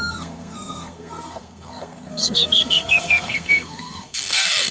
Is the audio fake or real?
fake